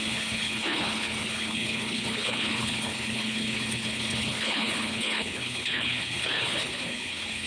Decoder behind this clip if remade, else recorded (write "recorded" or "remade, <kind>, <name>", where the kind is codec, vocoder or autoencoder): remade, codec, HILCodec